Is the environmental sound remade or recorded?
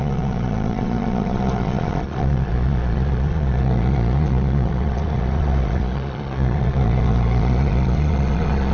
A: remade